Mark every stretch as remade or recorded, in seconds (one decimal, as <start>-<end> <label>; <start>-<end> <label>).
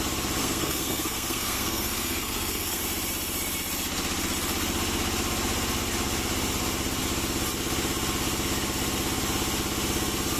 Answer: 0.0-0.4 recorded; 0.4-2.8 remade; 2.8-10.4 recorded